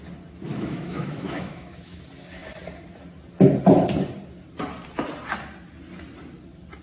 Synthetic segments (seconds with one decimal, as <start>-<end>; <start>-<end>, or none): 0.5-2.0